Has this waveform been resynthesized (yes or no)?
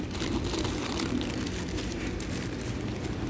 yes